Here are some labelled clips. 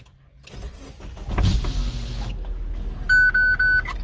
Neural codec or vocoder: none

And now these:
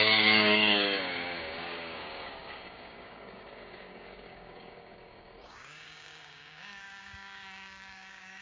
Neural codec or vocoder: codec, DAC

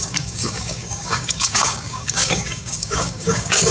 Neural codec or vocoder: codec, DAC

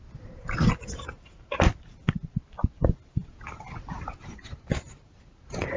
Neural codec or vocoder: none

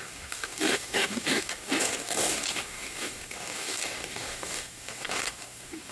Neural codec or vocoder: codec, DAC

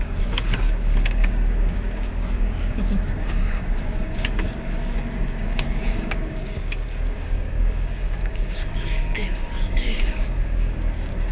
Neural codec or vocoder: codec, DAC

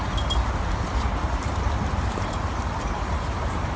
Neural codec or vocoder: none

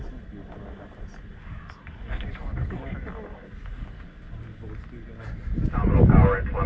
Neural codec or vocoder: none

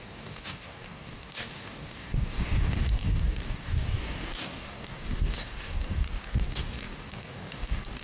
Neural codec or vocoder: codec, DAC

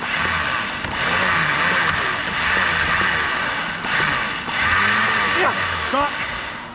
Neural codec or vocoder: none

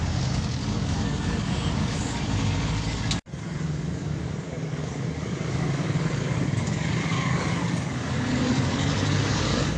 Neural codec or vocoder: codec, DAC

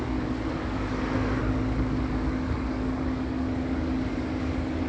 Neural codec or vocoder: codec, DAC